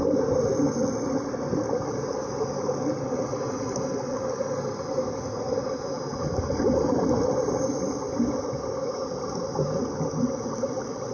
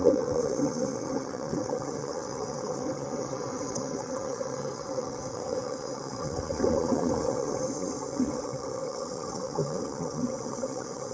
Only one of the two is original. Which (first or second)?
first